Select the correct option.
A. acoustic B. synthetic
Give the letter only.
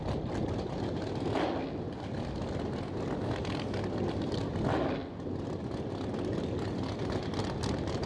A